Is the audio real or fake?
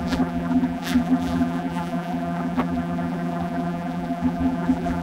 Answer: fake